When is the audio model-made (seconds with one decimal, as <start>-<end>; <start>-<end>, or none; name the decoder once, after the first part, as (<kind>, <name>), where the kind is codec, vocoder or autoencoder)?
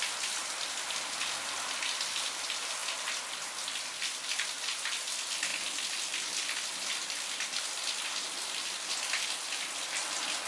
none